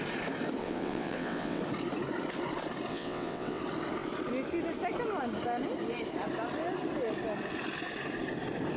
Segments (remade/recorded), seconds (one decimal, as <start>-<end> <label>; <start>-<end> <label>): 0.0-0.6 recorded; 0.6-1.6 remade; 1.6-2.9 recorded; 2.9-3.6 remade; 3.6-8.8 recorded